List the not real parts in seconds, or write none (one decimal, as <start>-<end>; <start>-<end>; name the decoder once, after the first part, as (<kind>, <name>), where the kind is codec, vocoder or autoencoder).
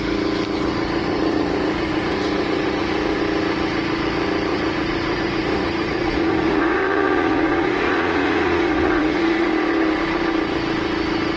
1.0-3.2 (vocoder, Vocos); 4.5-9.5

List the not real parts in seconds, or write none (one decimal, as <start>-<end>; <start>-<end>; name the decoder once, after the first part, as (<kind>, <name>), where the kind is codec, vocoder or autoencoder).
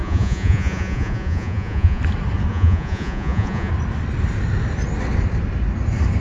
0.0-2.0 (vocoder, Vocos); 2.5-3.7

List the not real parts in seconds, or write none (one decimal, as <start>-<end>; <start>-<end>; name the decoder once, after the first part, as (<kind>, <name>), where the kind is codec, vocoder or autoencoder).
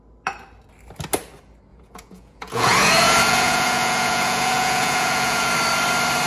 1.7-5.5 (vocoder, Vocos)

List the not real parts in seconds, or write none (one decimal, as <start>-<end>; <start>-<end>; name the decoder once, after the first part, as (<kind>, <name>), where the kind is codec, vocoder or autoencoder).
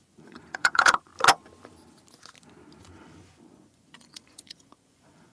0.0-1.1 (vocoder, Vocos); 2.8-5.3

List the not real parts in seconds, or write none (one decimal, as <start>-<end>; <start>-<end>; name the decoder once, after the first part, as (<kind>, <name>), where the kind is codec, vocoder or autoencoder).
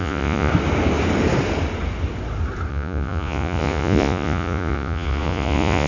0.0-0.5 (vocoder, Vocos); 2.7-5.9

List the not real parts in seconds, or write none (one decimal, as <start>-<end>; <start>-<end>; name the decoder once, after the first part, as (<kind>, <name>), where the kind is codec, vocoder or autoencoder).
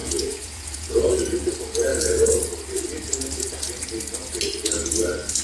0.0-1.1 (vocoder, Vocos)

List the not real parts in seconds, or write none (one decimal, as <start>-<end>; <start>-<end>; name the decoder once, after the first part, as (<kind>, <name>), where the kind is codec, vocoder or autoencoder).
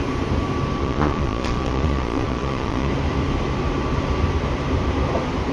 0.8-2.9 (vocoder, Vocos)